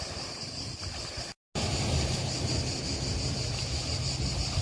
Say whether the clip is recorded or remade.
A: recorded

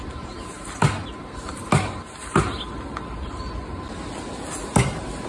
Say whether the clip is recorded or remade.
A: recorded